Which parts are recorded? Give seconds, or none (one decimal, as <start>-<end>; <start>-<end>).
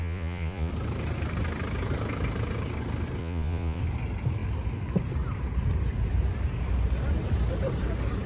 0.7-3.2; 3.8-8.3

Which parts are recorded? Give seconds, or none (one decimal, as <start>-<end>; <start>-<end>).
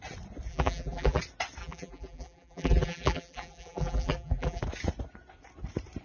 0.0-0.5; 1.2-1.6; 4.6-6.0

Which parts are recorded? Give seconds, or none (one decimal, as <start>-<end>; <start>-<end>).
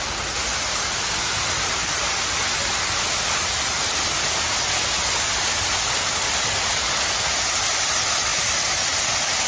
0.0-9.5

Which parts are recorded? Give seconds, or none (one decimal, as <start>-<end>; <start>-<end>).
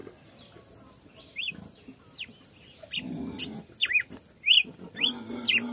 0.0-5.7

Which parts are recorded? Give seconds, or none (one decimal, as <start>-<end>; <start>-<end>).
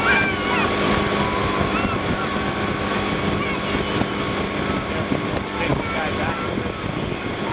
0.0-7.5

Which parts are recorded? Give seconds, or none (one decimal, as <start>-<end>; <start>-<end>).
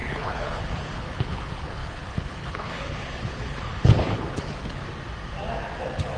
4.8-5.8